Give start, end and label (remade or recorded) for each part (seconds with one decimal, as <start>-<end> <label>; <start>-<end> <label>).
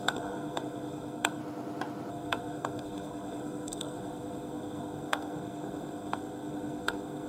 0.0-1.4 remade; 1.4-2.1 recorded; 2.1-7.3 remade